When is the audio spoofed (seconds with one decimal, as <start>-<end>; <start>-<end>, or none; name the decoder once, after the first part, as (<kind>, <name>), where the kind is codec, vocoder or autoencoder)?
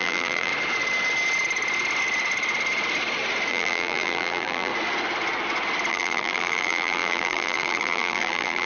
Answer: 0.0-0.5 (vocoder, BigVGAN v2); 3.5-4.7; 5.9-8.7